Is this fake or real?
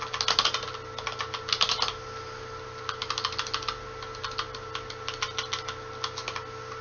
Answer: real